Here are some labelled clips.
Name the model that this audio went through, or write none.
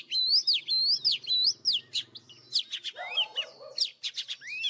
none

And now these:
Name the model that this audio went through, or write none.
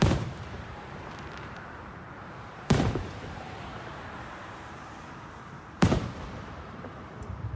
vocoder, BigVGAN v2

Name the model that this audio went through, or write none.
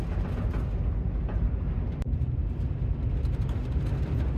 none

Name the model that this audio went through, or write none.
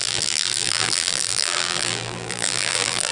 vocoder, BigVGAN v2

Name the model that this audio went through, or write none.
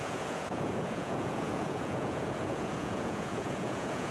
vocoder, Vocos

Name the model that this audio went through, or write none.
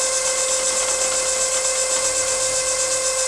none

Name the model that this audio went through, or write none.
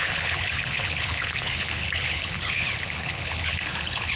codec, HILCodec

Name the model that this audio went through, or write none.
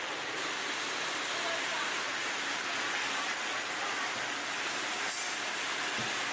none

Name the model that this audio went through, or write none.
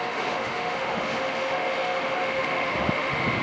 autoencoder, DAC-VAE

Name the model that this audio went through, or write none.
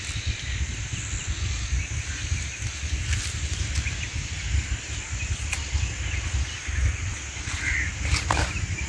none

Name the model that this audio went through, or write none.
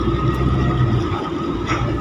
none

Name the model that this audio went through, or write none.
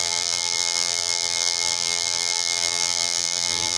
vocoder, BigVGAN v2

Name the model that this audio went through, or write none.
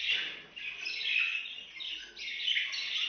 none